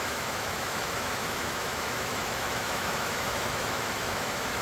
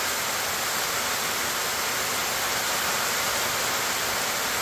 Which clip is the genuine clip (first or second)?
second